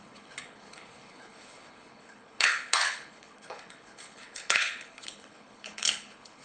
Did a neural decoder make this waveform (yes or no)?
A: yes